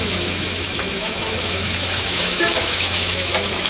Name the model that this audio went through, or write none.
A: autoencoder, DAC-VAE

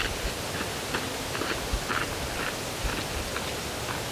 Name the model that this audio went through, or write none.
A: none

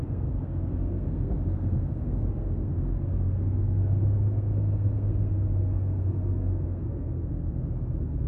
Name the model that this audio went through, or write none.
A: codec, SNAC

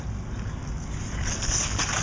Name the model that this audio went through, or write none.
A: none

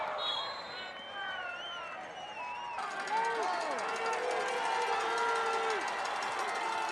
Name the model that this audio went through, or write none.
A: none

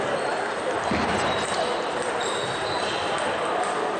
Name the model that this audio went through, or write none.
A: none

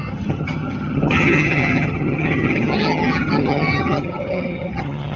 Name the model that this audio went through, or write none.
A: vocoder, HiFi-GAN